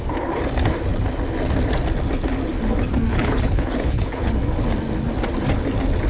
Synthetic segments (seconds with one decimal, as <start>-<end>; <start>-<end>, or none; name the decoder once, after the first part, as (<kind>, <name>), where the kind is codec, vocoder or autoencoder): 3.1-4.3 (codec, HILCodec)